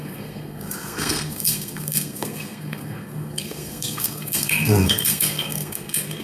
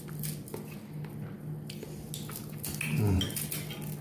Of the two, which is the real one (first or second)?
second